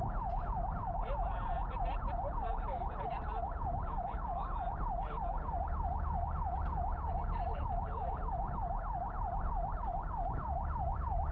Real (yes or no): yes